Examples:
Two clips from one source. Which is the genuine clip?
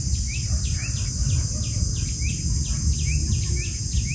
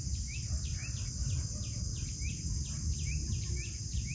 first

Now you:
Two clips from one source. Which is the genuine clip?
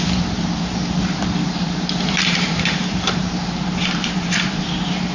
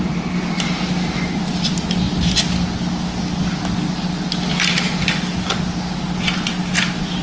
second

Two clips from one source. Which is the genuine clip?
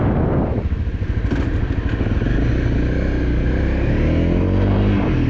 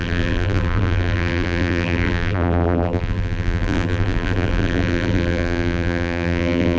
first